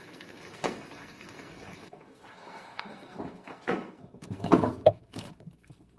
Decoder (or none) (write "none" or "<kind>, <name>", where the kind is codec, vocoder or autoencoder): codec, SNAC